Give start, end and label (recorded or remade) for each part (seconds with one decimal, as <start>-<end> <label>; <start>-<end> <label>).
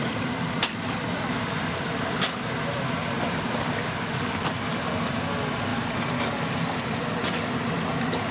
0.0-4.5 remade; 4.5-8.3 recorded